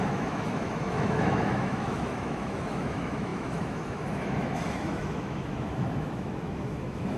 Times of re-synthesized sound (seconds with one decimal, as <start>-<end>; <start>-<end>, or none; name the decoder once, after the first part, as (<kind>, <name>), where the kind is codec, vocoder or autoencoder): 0.0-7.2 (autoencoder, DAC-VAE)